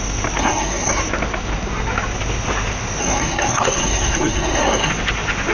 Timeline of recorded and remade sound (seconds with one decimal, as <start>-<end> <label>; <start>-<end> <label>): 0.0-0.4 recorded; 0.4-1.0 remade; 1.0-3.0 recorded; 3.0-4.9 remade; 4.9-5.5 recorded